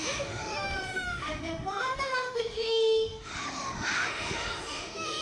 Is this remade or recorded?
remade